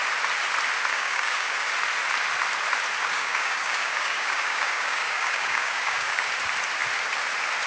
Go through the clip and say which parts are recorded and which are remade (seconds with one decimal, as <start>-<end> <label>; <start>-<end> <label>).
0.0-0.9 recorded; 0.9-1.7 remade; 1.7-3.0 recorded; 3.0-6.3 remade; 6.3-7.7 recorded